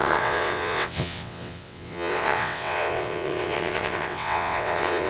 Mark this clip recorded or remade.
remade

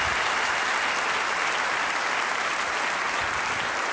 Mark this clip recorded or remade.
recorded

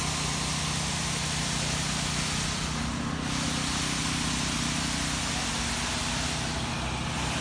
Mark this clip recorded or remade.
recorded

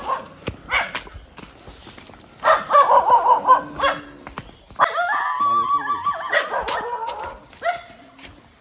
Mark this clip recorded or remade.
recorded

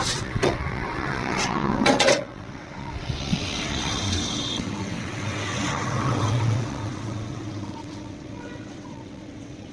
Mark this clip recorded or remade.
remade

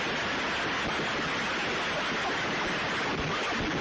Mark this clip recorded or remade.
recorded